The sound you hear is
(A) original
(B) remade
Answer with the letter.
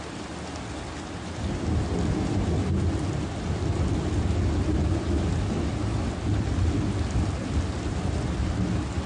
A